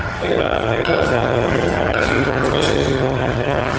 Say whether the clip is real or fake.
fake